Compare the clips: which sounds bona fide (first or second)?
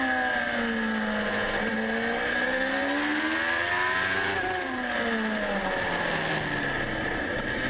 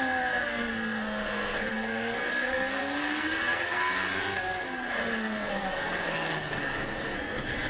first